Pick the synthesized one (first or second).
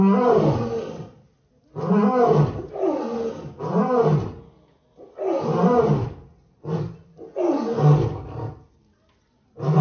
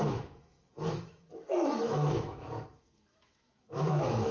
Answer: second